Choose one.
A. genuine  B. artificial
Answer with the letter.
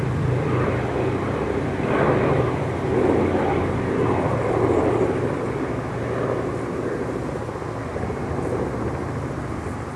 A